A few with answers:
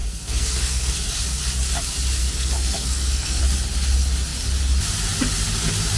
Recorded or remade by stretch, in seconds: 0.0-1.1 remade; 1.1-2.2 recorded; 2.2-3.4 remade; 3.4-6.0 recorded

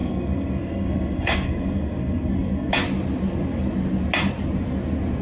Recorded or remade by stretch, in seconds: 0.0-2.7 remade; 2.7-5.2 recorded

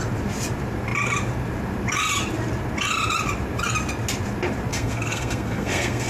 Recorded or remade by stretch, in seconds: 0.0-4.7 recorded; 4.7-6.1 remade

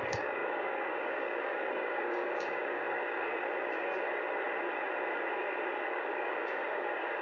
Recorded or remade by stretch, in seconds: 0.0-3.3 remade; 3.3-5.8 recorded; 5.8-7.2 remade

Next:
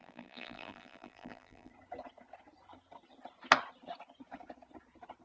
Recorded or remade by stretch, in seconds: 0.0-1.7 remade; 1.7-5.2 recorded

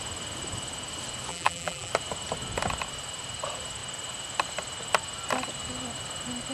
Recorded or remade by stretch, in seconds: 0.0-1.3 recorded; 1.3-1.9 remade; 1.9-6.5 recorded